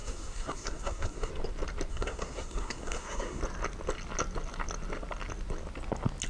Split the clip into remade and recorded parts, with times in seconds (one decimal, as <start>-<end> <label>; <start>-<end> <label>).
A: 0.0-1.3 remade; 1.3-1.9 recorded; 1.9-3.4 remade; 3.4-6.3 recorded